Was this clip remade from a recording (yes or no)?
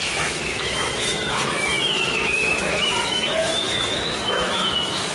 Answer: yes